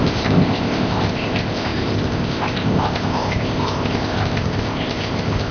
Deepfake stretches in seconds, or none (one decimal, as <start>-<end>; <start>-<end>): 0.0-5.5